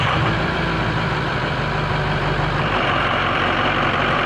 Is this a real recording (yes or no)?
no